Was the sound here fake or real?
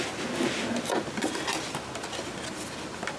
real